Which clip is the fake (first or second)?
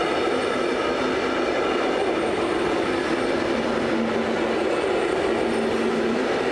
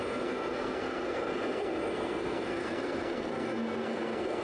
second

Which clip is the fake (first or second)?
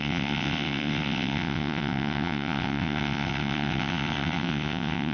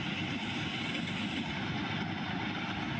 first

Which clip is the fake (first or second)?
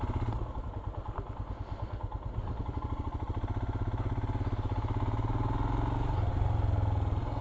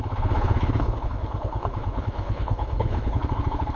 second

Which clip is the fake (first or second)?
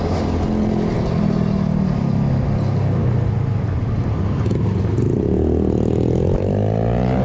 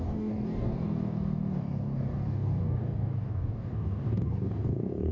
second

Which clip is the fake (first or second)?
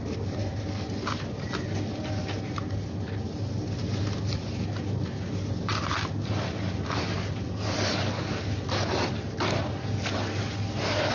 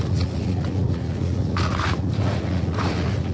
second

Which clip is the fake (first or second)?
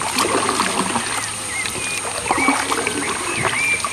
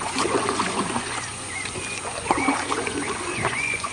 second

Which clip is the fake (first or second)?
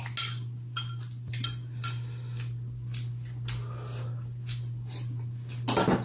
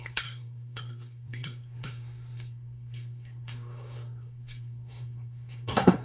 second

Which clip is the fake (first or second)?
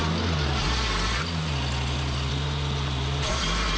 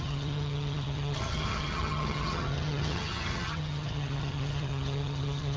second